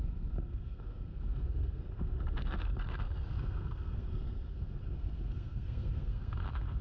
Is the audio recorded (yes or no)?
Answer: no